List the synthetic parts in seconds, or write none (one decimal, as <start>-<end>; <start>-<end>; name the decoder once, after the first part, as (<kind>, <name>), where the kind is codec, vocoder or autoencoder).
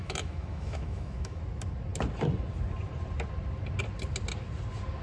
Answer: 0.0-1.4 (autoencoder, DAC-VAE)